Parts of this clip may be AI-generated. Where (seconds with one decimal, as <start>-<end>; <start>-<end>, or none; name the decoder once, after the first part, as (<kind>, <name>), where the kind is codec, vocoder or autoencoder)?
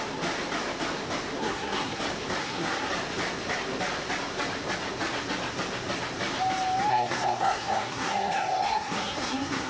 1.4-2.0 (codec, SNAC); 2.4-2.9; 6.9-9.7